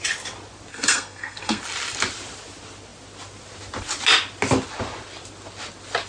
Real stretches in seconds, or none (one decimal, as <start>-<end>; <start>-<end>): 0.0-0.7; 1.6-6.1